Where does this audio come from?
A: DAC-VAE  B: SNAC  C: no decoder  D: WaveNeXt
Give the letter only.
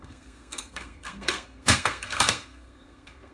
B